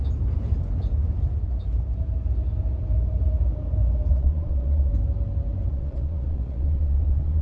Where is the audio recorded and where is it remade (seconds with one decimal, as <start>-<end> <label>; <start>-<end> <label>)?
0.0-4.1 recorded; 4.1-4.9 remade; 4.9-5.7 recorded; 5.7-7.4 remade